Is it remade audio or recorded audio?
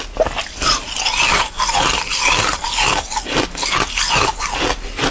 recorded